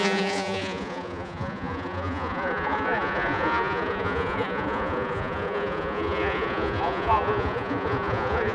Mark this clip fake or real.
fake